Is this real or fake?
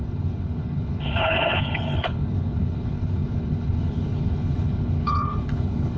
fake